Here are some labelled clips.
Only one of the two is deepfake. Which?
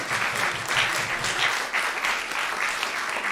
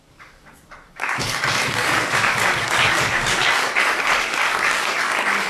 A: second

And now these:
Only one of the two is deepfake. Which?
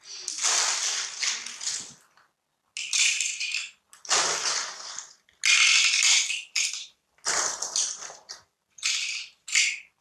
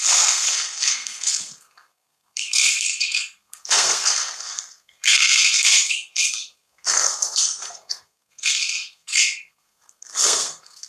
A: second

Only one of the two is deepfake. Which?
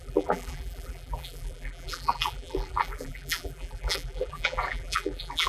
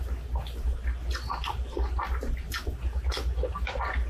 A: first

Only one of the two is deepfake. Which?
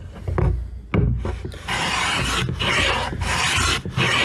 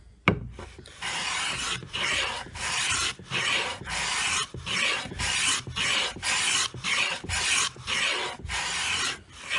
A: second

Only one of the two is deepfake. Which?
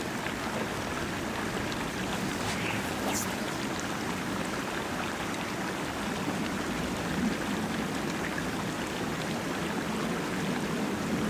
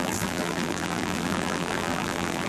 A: second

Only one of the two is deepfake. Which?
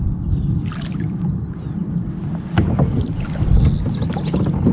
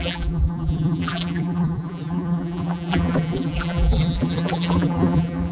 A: second